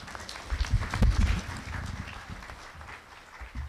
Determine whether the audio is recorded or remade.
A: recorded